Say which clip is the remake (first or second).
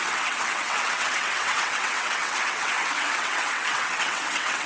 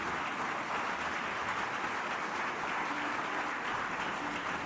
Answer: first